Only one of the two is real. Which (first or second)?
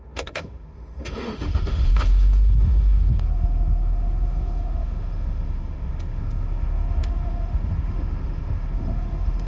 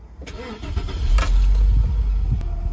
second